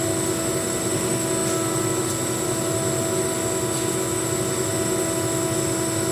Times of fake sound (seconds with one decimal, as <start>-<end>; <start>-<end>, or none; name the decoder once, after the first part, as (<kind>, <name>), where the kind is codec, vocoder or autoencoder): none